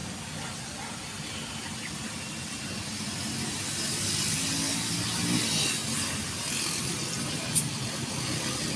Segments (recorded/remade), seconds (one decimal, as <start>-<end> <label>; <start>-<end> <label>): 0.0-8.8 recorded